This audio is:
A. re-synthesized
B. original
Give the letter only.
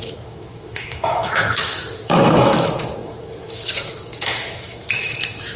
A